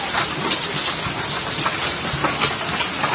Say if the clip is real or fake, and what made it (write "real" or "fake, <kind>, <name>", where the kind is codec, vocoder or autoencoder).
real